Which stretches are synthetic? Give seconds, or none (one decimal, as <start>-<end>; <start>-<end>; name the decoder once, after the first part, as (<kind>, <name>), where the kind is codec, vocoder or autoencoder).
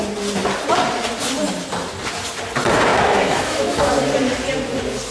2.9-3.9 (autoencoder, DAC-VAE)